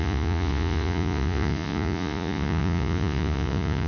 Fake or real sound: fake